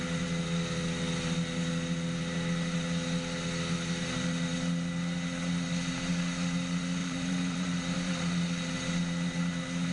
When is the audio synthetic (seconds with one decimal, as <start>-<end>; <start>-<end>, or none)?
7.0-8.7